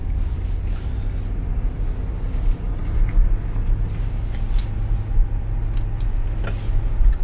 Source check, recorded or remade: recorded